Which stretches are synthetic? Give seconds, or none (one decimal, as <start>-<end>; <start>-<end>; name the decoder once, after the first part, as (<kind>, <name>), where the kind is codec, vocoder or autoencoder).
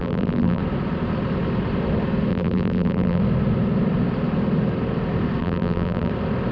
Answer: 0.0-0.6 (vocoder, BigVGAN v2); 2.3-3.2; 5.4-6.1